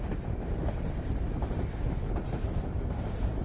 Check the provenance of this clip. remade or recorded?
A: recorded